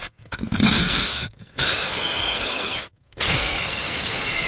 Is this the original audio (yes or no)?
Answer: no